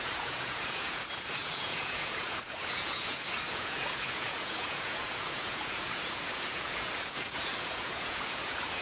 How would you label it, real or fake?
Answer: fake